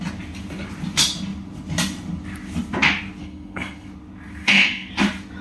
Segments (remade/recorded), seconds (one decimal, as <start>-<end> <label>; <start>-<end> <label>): 0.0-3.2 recorded; 3.2-3.9 remade; 3.9-4.4 recorded; 4.4-4.9 remade; 4.9-5.4 recorded